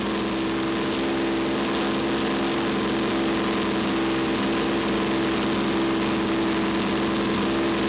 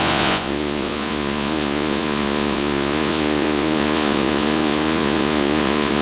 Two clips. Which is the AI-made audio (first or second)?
second